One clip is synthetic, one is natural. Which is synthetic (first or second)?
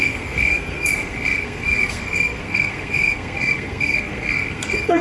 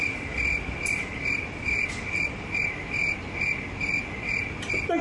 first